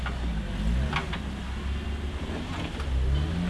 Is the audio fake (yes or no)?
no